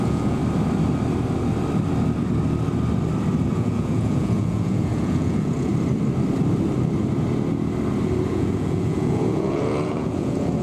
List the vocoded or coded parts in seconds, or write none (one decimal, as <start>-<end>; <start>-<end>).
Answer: 0.0-0.4; 3.5-5.7; 8.3-10.6